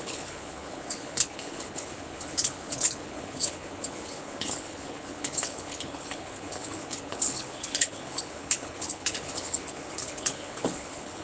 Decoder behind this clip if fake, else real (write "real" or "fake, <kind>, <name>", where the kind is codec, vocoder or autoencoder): fake, codec, HILCodec